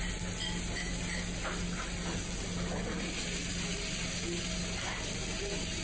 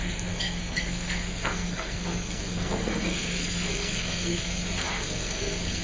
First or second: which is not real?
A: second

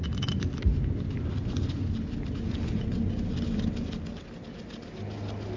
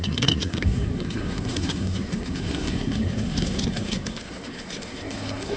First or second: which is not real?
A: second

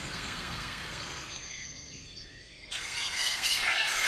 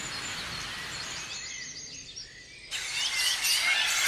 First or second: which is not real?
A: first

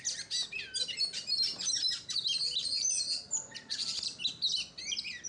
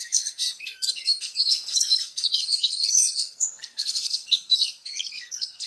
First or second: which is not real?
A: second